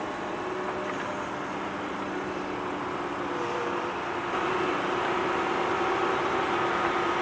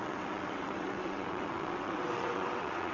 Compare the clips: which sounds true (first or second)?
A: first